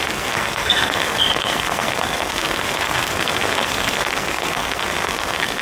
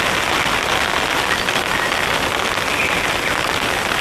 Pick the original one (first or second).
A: second